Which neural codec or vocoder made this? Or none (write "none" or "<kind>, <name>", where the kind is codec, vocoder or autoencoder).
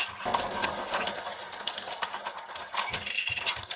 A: none